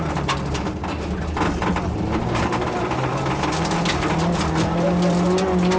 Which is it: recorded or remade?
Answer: recorded